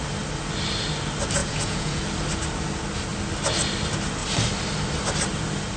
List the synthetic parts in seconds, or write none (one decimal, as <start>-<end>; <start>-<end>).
1.4-2.0